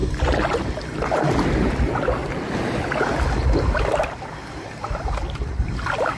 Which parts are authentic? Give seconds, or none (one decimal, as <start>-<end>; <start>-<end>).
0.0-6.2

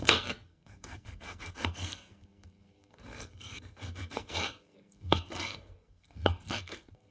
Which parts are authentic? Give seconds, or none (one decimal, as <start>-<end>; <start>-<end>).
none

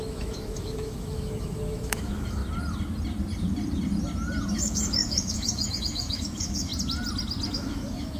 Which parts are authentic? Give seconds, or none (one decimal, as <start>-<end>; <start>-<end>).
2.4-4.5; 6.7-7.5

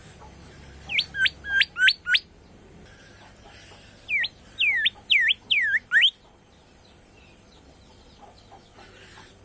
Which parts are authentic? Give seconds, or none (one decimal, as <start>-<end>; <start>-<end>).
0.0-9.4

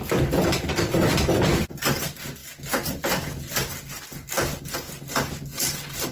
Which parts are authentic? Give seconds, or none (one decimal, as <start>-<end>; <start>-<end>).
0.0-6.1

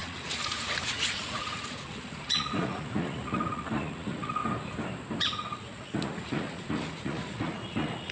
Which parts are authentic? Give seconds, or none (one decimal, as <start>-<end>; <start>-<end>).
4.4-5.2